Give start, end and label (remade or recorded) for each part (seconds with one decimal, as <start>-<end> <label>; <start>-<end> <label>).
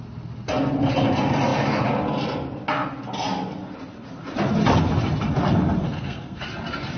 0.0-5.8 recorded; 5.8-6.4 remade; 6.4-7.0 recorded